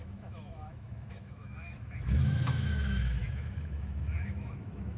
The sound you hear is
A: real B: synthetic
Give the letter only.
B